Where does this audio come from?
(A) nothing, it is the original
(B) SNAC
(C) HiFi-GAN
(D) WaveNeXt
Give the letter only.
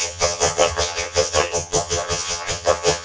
C